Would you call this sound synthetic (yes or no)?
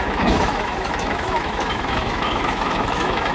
yes